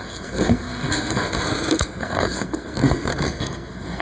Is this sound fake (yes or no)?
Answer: yes